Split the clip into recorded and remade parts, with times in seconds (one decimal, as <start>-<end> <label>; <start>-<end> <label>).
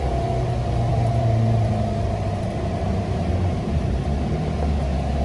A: 0.0-0.9 recorded; 0.9-4.0 remade; 4.0-5.2 recorded